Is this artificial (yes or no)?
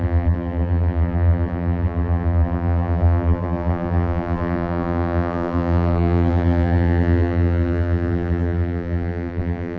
yes